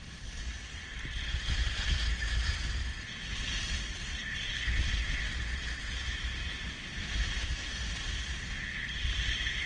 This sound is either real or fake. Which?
real